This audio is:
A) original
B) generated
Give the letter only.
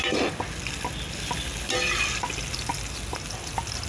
A